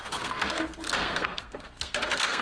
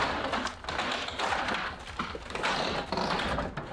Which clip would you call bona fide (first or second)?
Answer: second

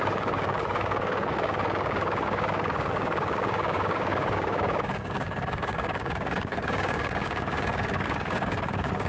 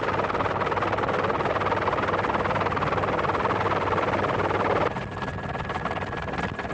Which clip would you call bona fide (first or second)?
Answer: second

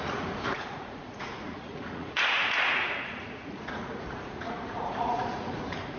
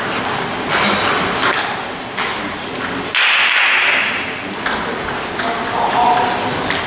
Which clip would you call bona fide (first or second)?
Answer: second